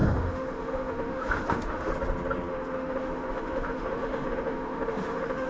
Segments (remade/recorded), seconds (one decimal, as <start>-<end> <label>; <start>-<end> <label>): 0.0-1.9 remade; 1.9-2.5 recorded; 2.5-5.5 remade